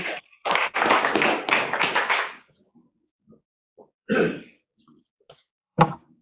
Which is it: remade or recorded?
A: remade